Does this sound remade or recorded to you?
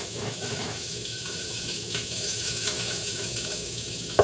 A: remade